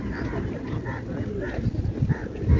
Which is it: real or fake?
real